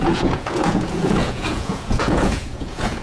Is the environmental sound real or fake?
fake